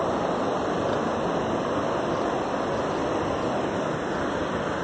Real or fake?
real